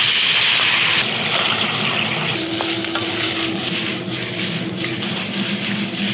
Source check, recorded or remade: recorded